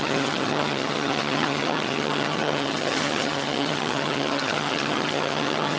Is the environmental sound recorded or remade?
remade